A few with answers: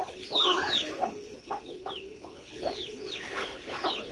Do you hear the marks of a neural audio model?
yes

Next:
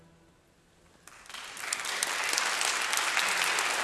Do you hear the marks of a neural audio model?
no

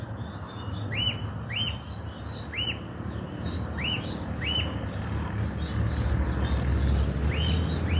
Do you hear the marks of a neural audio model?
no